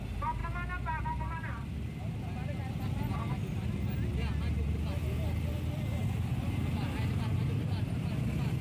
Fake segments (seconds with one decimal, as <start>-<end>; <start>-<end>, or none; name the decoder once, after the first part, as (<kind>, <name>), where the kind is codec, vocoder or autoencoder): none